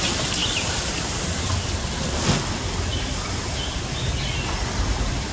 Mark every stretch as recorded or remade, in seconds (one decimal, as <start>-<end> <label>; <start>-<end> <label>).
0.0-5.3 recorded